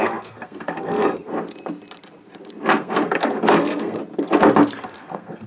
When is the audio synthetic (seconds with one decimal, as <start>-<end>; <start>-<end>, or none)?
0.0-1.3; 2.7-4.0; 4.8-5.5

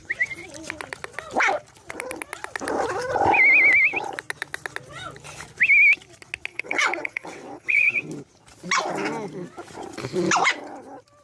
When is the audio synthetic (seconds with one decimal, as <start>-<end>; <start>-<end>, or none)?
6.5-8.1